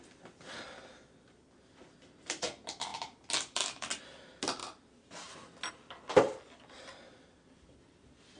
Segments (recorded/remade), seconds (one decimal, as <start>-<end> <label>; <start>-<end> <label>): 0.0-8.4 recorded